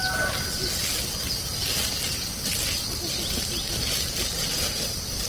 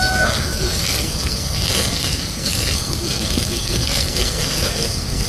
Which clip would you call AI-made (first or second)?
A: second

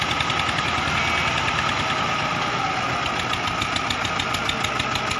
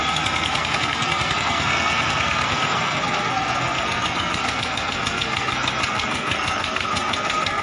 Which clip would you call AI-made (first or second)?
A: second